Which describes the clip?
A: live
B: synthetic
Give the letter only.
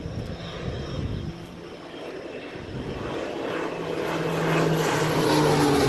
A